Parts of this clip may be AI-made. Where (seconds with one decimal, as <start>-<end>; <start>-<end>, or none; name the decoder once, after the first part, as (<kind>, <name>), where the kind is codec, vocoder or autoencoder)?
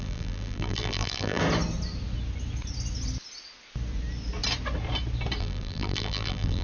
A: 0.0-1.4 (vocoder, BigVGAN v2); 5.4-6.6